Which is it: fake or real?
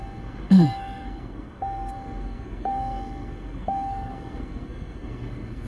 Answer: fake